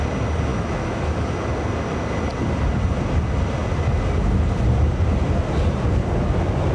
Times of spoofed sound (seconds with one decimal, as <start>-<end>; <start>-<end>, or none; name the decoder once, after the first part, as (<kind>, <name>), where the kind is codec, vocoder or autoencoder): 0.5-1.3 (autoencoder, DAC-VAE)